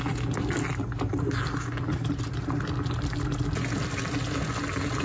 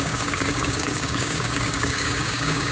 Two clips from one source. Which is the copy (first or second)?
second